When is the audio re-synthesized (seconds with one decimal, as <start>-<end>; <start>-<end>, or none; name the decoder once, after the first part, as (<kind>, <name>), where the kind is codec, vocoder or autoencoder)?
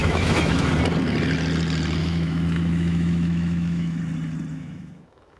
0.0-0.7 (autoencoder, DAC-VAE); 2.0-4.0; 4.5-5.4